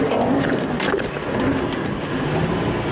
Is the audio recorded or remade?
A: recorded